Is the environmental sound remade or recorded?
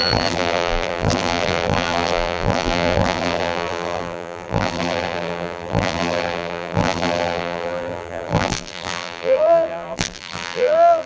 remade